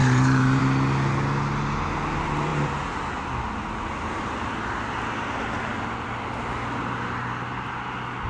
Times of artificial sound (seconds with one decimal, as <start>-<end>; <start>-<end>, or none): 0.0-0.6

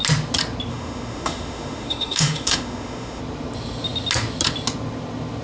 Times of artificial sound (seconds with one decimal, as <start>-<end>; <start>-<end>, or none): 0.7-3.2

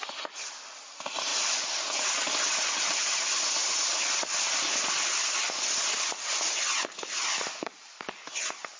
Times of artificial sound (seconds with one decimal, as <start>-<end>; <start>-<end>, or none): none

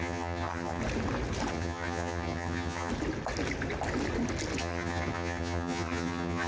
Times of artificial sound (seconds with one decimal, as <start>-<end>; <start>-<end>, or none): 0.0-0.8; 1.5-2.9; 4.6-6.5

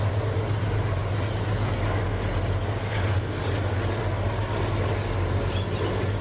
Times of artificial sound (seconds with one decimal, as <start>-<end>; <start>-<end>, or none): none

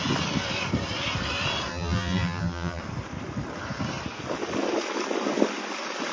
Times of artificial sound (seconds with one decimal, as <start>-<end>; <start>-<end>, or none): 1.7-2.8

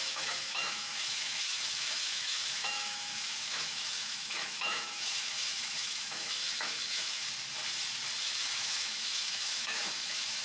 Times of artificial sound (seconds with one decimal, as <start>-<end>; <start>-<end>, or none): 0.0-7.2; 8.2-10.4